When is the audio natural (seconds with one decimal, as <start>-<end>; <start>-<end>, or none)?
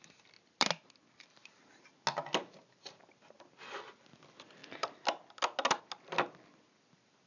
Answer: 0.0-7.3